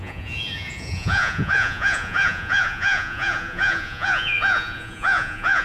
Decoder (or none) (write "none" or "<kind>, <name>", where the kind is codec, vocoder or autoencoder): vocoder, Vocos